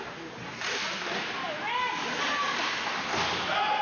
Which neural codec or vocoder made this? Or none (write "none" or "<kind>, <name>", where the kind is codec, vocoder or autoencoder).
none